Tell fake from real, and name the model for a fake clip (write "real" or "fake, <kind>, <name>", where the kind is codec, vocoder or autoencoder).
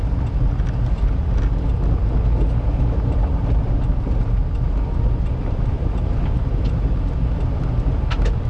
real